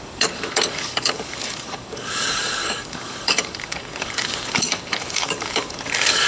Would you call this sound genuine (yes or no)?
no